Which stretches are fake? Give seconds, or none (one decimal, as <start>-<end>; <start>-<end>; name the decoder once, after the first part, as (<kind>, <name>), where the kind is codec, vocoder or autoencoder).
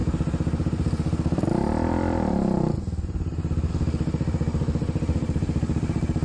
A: none